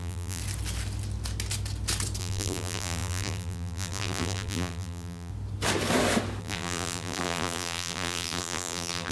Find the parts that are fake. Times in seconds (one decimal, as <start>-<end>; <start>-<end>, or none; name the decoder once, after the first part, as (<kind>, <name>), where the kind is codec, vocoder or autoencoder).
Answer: 0.0-0.4 (vocoder, BigVGAN v2); 2.2-5.3; 6.4-9.1